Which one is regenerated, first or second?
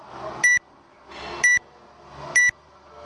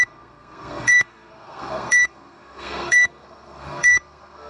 second